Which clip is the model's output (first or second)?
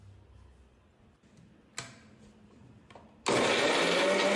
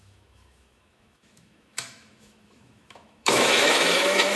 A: second